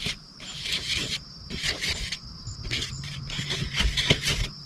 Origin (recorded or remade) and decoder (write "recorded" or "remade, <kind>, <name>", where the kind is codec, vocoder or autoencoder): remade, vocoder, BigVGAN v2